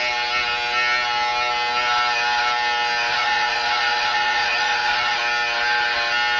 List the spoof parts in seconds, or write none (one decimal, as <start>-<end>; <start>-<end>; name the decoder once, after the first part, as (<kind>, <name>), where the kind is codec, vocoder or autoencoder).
3.1-5.2 (vocoder, Vocos)